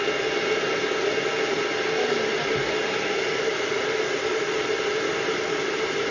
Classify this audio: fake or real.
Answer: real